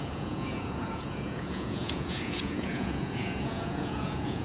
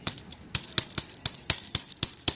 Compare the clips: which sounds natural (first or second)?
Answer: second